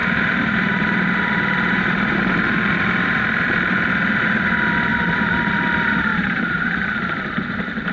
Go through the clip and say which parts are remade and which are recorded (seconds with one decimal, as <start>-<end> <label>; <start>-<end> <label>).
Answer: 0.0-4.5 remade; 4.5-4.9 recorded; 4.9-5.5 remade; 5.5-6.1 recorded; 6.1-6.8 remade; 6.8-7.9 recorded